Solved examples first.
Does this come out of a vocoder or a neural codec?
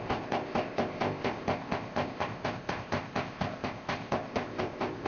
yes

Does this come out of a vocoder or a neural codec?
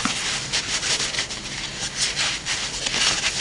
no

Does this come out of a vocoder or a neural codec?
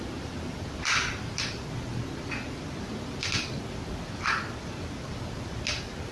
no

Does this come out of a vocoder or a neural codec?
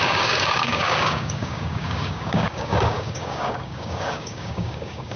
yes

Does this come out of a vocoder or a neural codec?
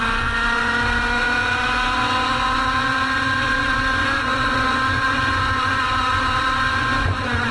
yes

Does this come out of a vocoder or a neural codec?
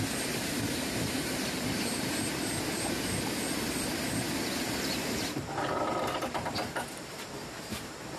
yes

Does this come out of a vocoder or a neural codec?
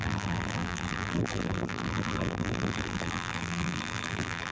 yes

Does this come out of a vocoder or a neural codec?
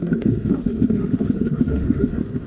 yes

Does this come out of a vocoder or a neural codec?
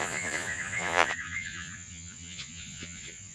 yes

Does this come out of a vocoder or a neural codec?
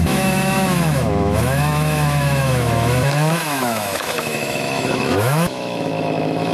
yes